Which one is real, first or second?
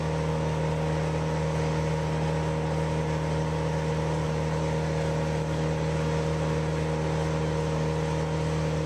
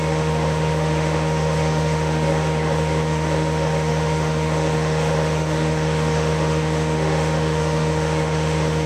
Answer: first